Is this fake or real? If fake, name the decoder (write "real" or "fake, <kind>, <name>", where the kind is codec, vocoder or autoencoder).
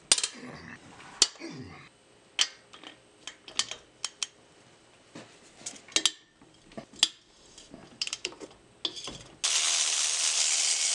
real